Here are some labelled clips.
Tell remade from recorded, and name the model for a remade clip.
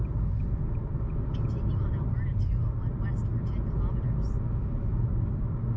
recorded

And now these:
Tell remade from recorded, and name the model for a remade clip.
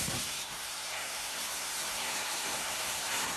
remade, codec, SNAC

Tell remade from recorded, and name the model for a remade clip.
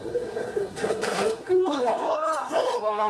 remade, codec, SNAC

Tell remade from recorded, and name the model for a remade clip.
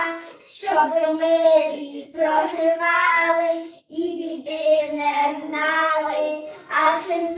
remade, codec, SNAC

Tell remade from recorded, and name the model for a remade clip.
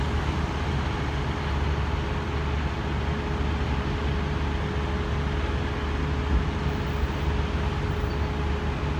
recorded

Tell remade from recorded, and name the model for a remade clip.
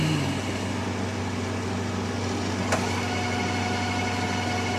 recorded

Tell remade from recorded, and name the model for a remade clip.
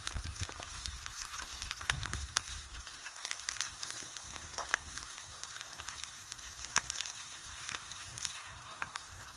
remade, codec, SNAC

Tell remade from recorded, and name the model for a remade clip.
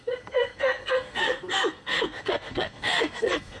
remade, codec, SNAC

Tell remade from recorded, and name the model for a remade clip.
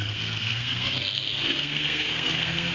remade, codec, SNAC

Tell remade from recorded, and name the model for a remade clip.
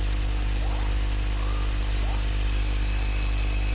recorded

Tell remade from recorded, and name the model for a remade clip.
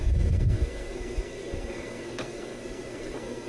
remade, codec, SNAC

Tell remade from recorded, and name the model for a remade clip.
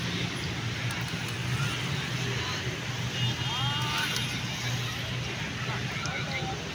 recorded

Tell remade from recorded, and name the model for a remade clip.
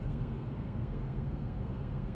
remade, codec, SNAC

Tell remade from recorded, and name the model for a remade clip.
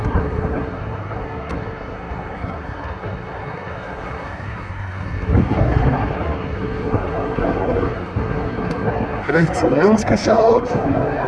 remade, codec, SNAC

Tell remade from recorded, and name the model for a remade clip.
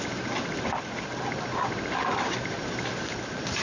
recorded